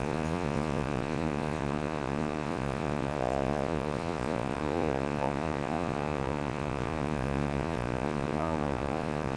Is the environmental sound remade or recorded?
remade